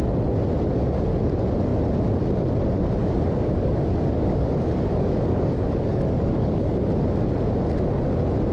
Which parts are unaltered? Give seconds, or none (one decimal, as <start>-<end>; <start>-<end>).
0.0-3.0; 6.9-8.5